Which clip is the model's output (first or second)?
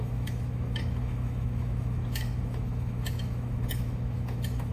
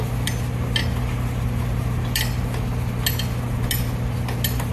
first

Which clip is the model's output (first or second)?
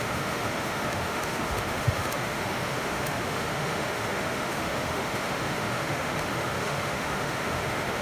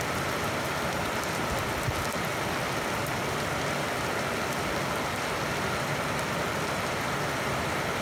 first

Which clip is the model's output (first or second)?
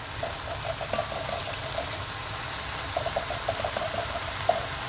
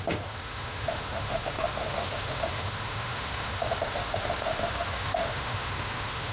second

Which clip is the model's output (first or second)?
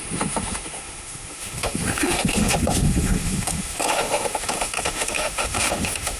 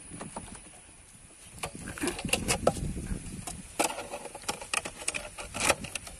first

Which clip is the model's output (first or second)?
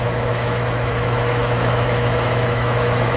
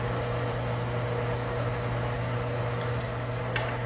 first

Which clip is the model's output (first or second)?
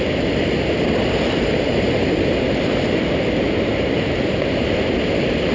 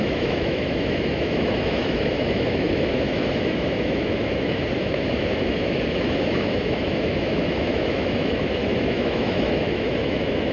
second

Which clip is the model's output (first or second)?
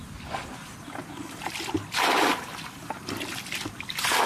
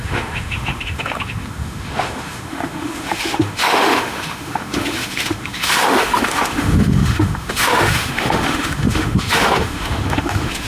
second